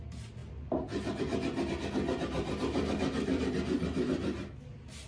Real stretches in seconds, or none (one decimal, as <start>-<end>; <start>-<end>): 0.0-0.4; 1.2-2.6; 3.4-5.1